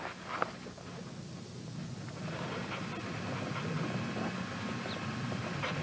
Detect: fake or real real